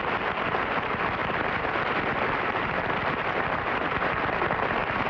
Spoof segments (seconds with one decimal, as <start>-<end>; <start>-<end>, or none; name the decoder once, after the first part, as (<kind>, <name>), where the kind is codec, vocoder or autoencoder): 1.2-4.3 (vocoder, BigVGAN v2)